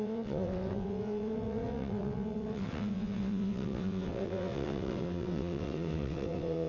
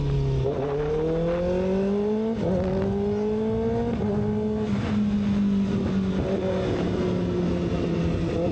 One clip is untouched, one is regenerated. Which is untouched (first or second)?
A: second